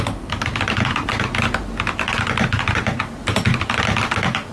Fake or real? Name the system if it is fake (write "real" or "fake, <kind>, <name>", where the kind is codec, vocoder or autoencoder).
real